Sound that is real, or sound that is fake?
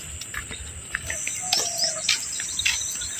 real